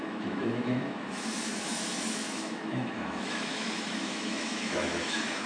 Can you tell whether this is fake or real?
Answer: fake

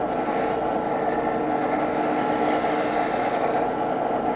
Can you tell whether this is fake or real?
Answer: real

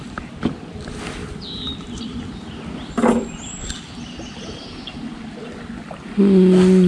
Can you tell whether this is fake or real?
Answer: real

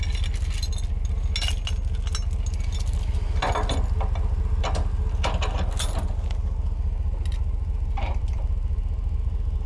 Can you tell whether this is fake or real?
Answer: real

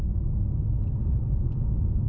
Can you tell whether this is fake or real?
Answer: real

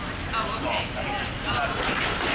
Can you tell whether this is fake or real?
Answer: real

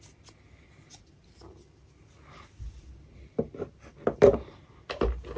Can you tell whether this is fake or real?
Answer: real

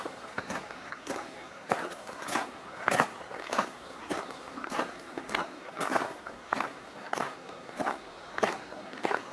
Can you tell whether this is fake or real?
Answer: fake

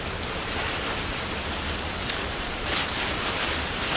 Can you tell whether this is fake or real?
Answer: real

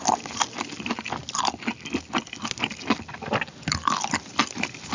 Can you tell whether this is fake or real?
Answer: real